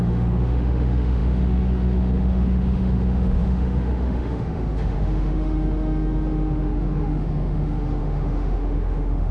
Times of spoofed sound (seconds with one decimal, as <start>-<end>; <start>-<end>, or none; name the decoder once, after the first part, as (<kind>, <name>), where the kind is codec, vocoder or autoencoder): 0.0-9.3 (autoencoder, DAC-VAE)